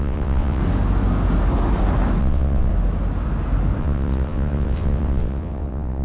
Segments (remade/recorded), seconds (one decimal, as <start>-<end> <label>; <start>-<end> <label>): 0.0-0.6 remade; 0.6-2.2 recorded; 2.2-2.7 remade; 2.7-3.8 recorded; 3.8-6.0 remade

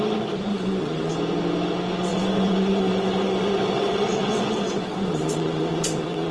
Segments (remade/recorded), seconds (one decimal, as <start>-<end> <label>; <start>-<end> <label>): 0.0-0.5 recorded; 0.5-1.1 remade; 1.1-2.1 recorded; 2.1-6.3 remade

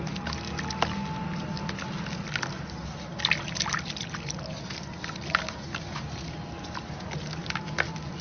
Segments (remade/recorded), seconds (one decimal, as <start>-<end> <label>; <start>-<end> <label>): 0.0-8.2 recorded

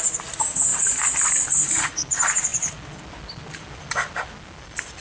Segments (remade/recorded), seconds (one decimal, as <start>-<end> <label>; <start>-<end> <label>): 0.0-5.0 recorded

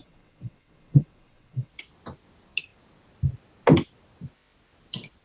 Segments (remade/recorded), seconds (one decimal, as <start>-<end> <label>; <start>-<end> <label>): 0.0-1.7 remade; 1.7-5.2 recorded

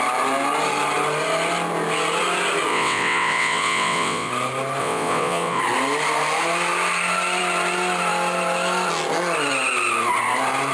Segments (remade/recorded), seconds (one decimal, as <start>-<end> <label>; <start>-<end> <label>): 0.0-2.7 recorded; 2.7-4.3 remade; 4.3-4.8 recorded; 4.8-5.6 remade; 5.6-10.7 recorded

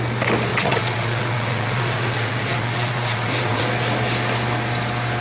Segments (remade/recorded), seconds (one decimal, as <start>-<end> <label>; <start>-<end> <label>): 0.0-0.5 recorded; 0.5-3.6 remade; 3.6-5.2 recorded

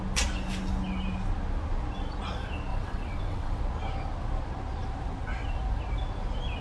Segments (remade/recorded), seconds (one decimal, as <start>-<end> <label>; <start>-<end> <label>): 0.0-2.7 recorded; 2.7-3.6 remade; 3.6-6.6 recorded